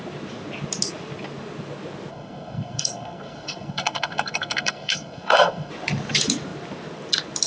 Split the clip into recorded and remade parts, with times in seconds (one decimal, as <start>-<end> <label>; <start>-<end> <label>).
0.0-2.1 recorded; 2.1-5.7 remade; 5.7-7.5 recorded